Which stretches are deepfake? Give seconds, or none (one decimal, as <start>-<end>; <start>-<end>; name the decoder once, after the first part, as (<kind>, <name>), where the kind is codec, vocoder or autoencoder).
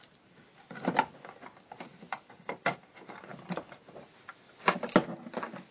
none